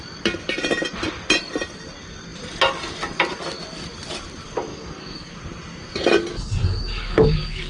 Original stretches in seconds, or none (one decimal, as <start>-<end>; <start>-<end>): 0.0-4.7; 5.3-6.3